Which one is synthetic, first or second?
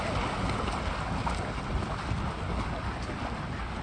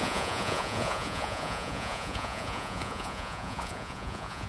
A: second